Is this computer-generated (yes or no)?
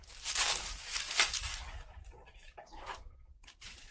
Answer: yes